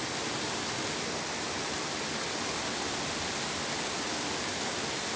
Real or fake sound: real